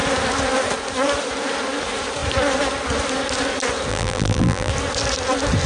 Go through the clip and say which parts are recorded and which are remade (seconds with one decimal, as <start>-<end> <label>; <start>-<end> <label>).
0.0-3.9 recorded; 3.9-4.7 remade; 4.7-5.7 recorded